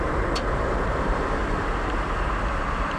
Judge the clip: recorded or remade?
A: recorded